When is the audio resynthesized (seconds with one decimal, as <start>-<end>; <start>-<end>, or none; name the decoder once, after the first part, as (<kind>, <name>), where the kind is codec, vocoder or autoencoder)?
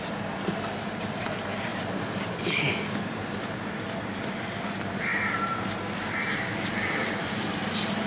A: 0.0-5.1 (vocoder, BigVGAN v2); 6.3-8.1